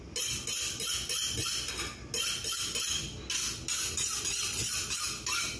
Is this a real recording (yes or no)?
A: yes